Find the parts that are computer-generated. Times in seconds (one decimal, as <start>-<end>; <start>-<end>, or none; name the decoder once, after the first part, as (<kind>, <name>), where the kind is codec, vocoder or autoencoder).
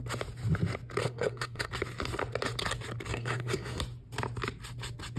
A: 1.0-1.7 (codec, SNAC); 3.1-3.8